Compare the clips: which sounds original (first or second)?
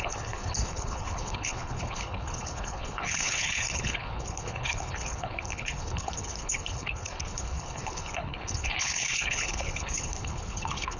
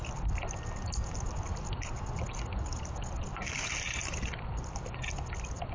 second